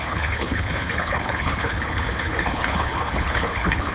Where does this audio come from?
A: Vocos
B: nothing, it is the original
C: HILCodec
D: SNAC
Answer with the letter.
C